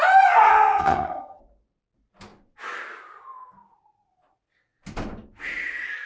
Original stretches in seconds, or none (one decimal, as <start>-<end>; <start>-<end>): 0.0-0.5; 1.4-6.1